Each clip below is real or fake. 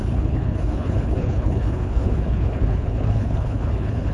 fake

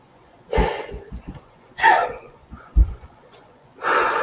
fake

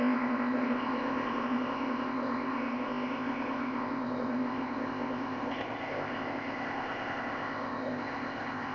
fake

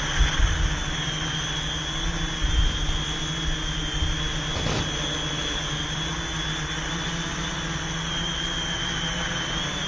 real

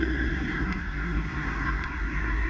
fake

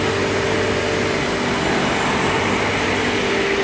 real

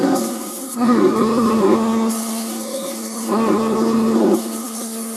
fake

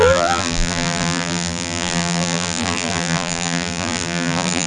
fake